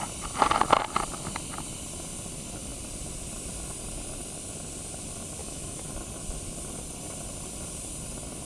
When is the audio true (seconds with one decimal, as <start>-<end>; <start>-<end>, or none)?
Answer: 0.0-5.4; 5.9-8.5